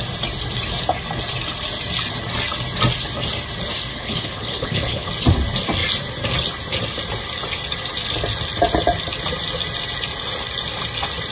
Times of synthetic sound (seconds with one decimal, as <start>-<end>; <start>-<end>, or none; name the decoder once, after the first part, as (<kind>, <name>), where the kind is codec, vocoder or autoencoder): 3.9-5.1 (codec, HILCodec)